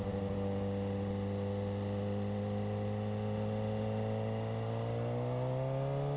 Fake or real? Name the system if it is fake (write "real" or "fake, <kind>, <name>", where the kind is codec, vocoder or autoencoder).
real